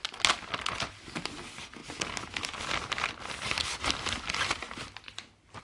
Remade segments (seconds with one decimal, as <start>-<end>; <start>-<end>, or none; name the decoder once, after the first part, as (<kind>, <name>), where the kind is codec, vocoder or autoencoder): none